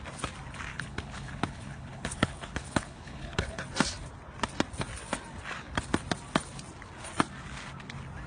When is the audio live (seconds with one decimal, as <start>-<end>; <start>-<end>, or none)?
0.0-0.7; 3.6-8.3